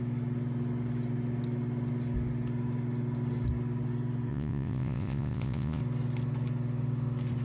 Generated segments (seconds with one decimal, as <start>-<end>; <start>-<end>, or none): 4.3-5.8